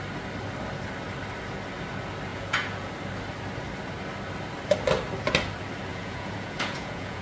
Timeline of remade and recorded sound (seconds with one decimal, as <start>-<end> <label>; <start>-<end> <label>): 0.0-2.3 recorded; 2.3-2.9 remade; 2.9-5.9 recorded; 5.9-7.2 remade